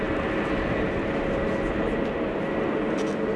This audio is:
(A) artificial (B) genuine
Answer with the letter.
B